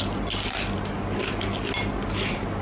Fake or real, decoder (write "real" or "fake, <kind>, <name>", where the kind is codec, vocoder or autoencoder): real